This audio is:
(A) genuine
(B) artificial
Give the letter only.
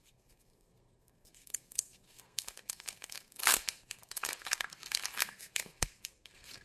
B